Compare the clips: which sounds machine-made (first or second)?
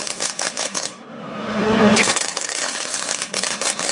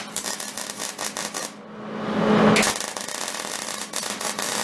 first